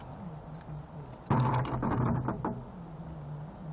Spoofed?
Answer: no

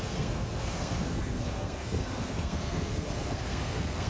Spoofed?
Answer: yes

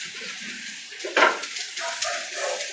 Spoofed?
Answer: no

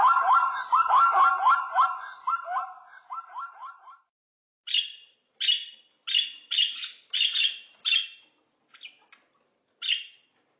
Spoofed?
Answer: no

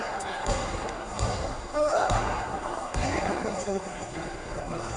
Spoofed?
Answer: yes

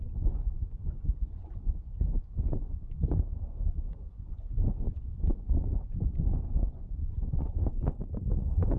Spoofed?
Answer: yes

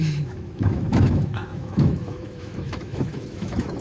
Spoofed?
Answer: yes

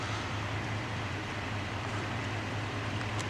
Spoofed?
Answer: yes